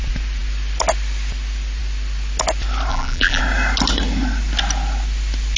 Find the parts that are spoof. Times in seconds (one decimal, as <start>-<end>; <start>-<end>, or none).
2.9-3.4